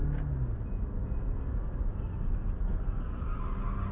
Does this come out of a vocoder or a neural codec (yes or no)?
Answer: no